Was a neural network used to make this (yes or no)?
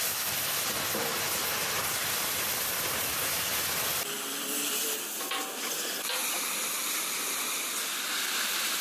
yes